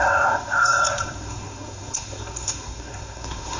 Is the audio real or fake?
fake